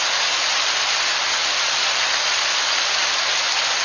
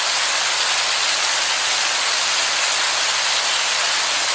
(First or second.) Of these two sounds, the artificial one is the first